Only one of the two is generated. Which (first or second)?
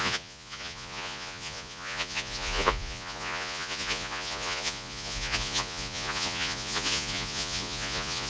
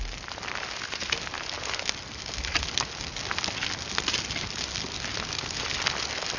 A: first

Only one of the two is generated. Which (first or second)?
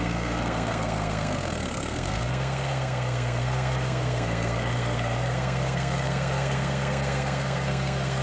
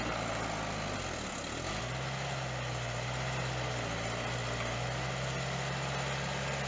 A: first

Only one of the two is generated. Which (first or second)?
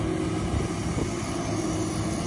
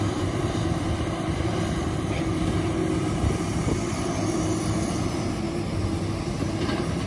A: second